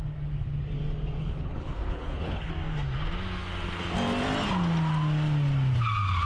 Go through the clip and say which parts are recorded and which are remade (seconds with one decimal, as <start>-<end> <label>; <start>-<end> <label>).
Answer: 0.0-1.2 recorded; 1.2-2.5 remade; 2.5-6.3 recorded